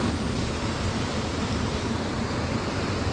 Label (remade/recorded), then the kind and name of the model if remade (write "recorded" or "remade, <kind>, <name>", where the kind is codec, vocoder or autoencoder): recorded